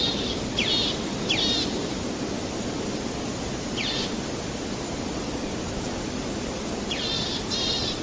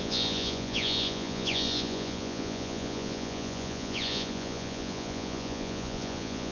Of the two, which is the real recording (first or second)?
first